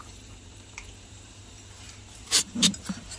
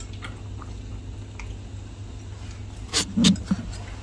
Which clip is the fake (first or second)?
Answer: first